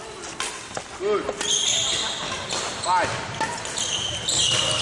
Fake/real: real